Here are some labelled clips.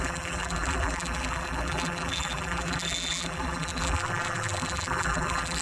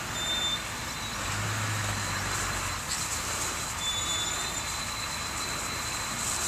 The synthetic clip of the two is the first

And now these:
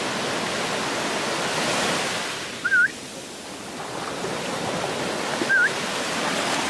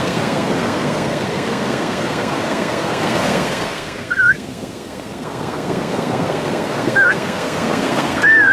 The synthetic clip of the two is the second